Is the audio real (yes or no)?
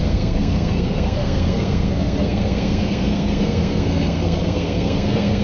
no